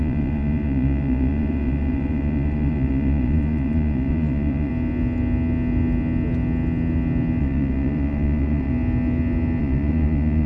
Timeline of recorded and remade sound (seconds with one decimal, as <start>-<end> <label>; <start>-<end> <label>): 0.0-4.7 remade; 4.7-7.4 recorded; 7.4-8.7 remade; 8.7-9.6 recorded; 9.6-10.5 remade

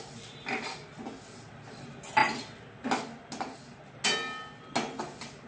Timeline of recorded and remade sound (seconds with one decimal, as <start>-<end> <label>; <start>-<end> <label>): 0.0-5.5 recorded

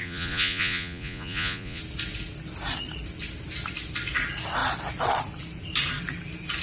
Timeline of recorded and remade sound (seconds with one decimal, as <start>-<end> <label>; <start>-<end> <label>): 0.0-1.8 remade; 1.8-6.6 recorded